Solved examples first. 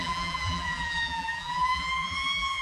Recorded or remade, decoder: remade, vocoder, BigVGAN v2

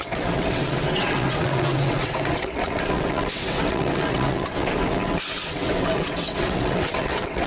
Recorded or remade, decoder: remade, vocoder, WaveNeXt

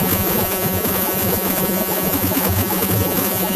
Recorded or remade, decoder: remade, vocoder, Vocos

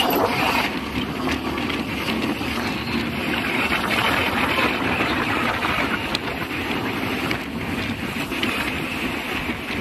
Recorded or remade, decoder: recorded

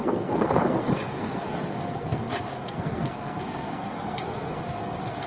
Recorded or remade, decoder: remade, codec, SNAC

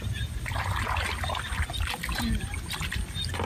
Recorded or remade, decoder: recorded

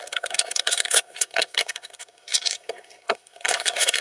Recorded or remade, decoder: remade, codec, SNAC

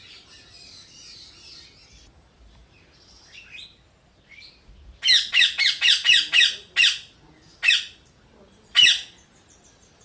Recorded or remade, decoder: recorded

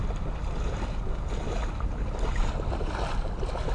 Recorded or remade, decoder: recorded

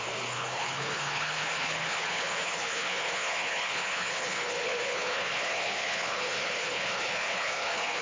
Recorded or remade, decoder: remade, codec, HILCodec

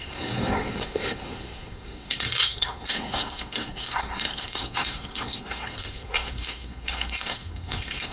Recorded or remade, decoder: remade, codec, SNAC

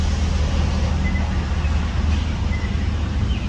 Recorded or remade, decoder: recorded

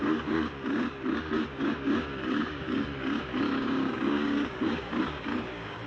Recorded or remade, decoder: remade, codec, DAC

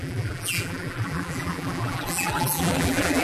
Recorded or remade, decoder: remade, vocoder, BigVGAN v2